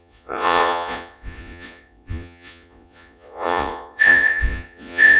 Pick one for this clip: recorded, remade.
remade